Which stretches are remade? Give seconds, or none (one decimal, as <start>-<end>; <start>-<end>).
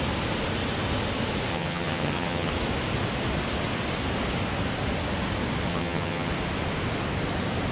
1.5-2.5; 5.7-6.3